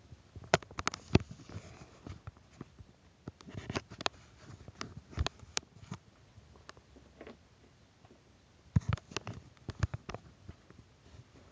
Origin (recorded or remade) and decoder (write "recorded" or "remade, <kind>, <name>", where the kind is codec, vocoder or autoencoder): recorded